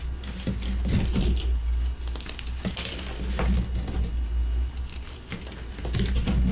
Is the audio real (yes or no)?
yes